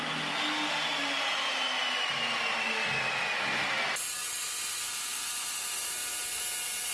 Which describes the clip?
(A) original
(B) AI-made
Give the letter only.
A